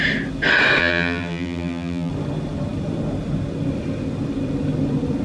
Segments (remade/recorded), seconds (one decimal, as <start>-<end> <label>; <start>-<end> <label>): 0.0-0.8 recorded; 0.8-2.1 remade; 2.1-5.2 recorded